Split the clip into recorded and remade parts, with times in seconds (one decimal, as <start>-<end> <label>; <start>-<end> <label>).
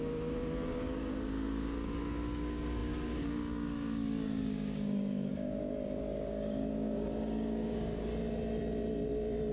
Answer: 0.0-8.1 remade; 8.1-9.5 recorded